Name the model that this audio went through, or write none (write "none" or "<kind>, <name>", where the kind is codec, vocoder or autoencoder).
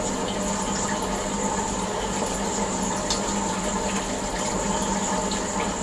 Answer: none